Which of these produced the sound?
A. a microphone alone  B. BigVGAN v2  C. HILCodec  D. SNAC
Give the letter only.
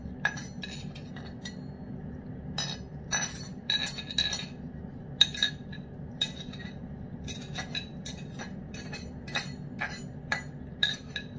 A